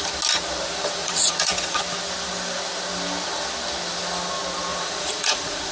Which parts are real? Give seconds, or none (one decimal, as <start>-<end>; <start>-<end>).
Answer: 0.0-1.0; 1.8-4.7